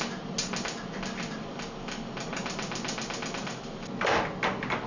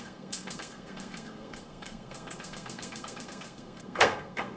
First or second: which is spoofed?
second